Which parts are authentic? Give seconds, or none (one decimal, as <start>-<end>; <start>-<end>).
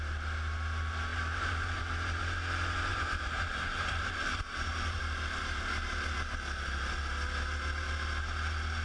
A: 0.0-1.1; 1.8-2.9; 5.0-8.8